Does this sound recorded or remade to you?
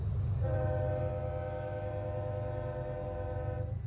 recorded